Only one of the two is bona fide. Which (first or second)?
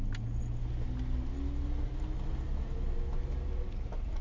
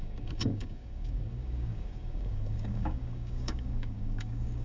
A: first